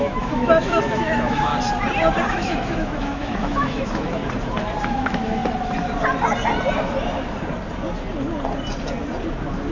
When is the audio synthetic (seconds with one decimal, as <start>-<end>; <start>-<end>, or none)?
0.0-1.5; 2.3-4.2; 4.8-5.4

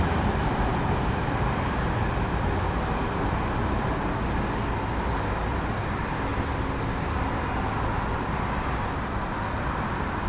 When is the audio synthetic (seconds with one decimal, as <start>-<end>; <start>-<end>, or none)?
none

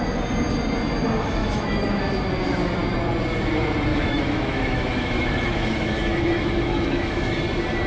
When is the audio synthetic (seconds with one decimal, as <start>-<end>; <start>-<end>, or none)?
1.4-2.0; 3.9-7.4

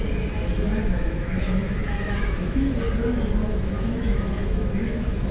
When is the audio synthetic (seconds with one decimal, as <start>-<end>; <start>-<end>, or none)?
0.7-2.8; 3.4-5.3

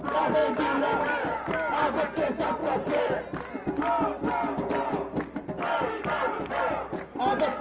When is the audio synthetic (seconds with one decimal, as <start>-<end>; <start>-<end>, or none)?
none

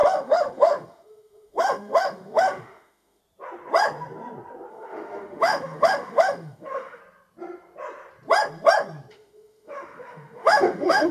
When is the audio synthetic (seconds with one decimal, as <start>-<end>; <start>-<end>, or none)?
0.0-3.2; 4.7-7.0; 9.1-11.1

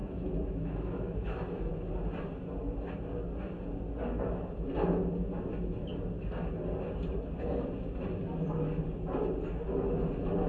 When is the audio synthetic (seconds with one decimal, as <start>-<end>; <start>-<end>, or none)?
0.0-1.7

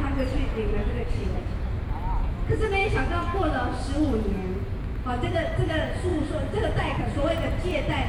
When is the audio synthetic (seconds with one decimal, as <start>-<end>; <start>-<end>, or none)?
0.8-1.6; 2.8-3.8